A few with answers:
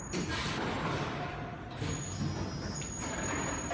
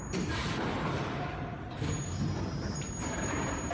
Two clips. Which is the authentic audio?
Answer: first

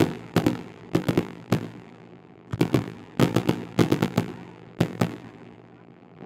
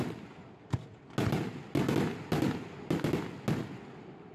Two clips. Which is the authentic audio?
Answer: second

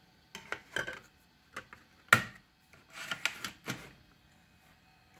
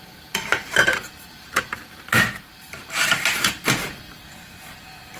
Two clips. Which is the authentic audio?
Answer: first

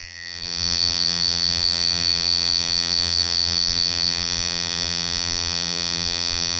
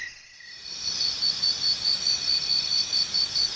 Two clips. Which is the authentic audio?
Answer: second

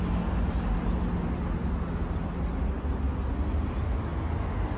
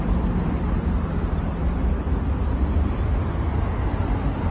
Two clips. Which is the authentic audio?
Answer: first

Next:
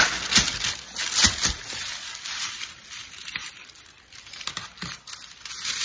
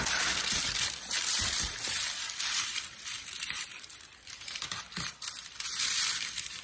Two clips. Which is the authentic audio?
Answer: first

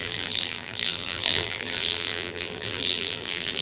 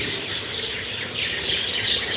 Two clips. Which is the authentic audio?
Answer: second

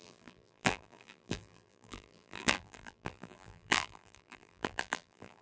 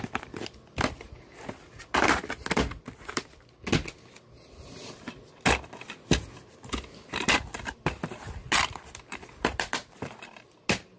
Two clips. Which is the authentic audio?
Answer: second